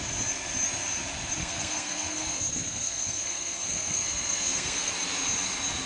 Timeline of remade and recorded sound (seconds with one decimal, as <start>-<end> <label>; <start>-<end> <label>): 0.0-1.4 recorded; 1.4-4.9 remade; 4.9-5.9 recorded